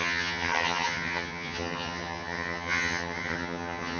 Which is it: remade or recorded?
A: remade